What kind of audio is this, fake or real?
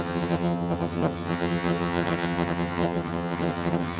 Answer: fake